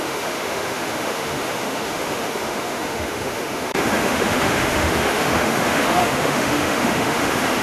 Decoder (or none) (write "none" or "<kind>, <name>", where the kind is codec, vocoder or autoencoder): autoencoder, DAC-VAE